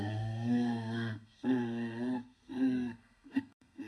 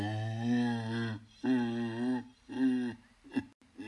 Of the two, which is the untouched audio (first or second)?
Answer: second